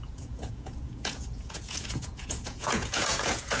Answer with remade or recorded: remade